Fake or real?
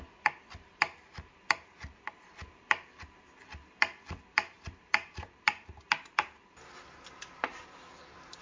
real